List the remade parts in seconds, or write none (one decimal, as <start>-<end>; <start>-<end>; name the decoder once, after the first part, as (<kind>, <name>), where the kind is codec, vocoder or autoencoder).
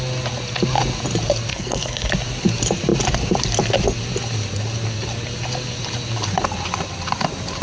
1.5-2.1 (codec, SNAC)